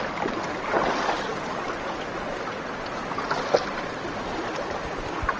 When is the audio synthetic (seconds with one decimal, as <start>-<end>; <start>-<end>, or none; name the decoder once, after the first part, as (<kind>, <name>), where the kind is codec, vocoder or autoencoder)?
none